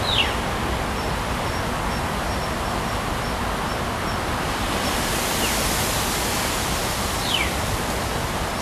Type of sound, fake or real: real